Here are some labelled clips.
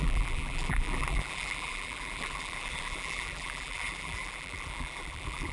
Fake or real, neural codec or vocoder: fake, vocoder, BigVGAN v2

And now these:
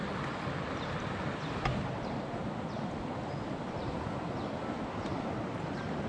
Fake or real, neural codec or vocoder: real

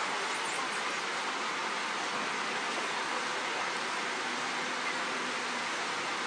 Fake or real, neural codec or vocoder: real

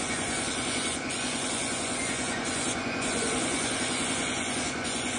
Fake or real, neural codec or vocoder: fake, vocoder, Vocos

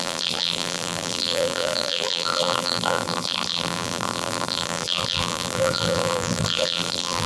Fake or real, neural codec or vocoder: fake, vocoder, BigVGAN v2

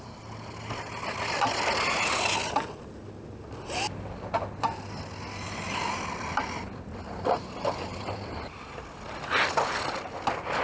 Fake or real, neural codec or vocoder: real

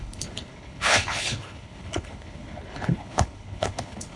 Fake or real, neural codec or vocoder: fake, codec, HILCodec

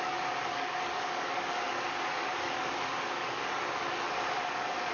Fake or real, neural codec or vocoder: fake, codec, DAC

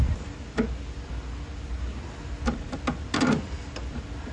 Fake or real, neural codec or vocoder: real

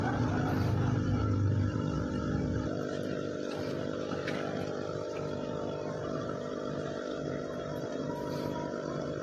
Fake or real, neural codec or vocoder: fake, vocoder, BigVGAN v2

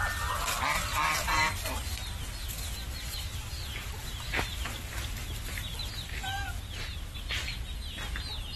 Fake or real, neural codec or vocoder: real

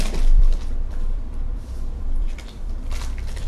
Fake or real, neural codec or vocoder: fake, vocoder, BigVGAN v2